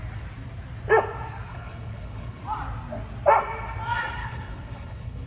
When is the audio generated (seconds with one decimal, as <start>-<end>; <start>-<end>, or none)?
1.5-2.4; 4.2-5.3

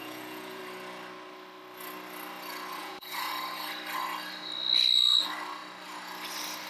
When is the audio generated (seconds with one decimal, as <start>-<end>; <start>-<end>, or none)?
0.0-0.6; 2.8-3.3

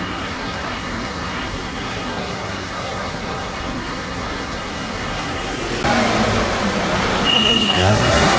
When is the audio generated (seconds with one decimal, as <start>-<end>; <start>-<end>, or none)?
0.0-5.6; 7.3-8.4

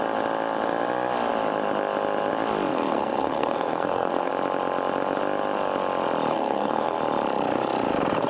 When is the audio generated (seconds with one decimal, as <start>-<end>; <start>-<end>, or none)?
2.7-4.3; 6.3-7.0

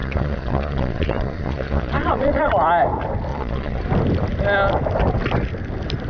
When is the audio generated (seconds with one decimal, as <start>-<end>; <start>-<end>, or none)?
0.0-2.5; 3.3-3.8

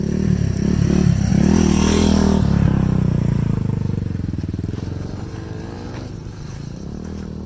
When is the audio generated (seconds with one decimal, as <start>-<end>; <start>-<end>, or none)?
none

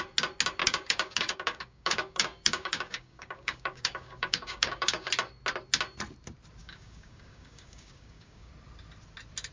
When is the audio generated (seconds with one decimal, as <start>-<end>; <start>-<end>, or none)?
0.6-5.1; 6.6-8.5

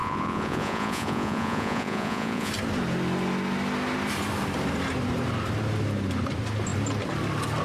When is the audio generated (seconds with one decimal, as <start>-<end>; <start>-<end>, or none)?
0.0-2.5